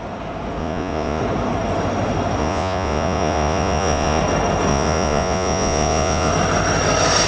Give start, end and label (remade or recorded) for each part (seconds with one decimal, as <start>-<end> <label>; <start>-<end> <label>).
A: 0.0-0.6 recorded; 0.6-1.2 remade; 1.2-2.4 recorded; 2.4-4.2 remade; 4.2-4.7 recorded; 4.7-6.3 remade; 6.3-7.3 recorded